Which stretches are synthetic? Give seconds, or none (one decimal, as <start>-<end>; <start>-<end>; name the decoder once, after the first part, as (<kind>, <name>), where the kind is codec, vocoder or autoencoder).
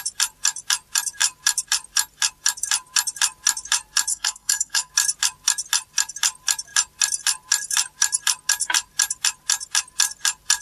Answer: 4.1-4.9 (codec, SNAC)